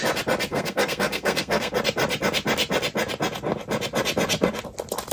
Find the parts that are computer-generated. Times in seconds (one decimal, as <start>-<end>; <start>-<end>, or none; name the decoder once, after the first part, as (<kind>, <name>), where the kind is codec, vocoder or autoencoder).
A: 0.5-1.7 (codec, SNAC)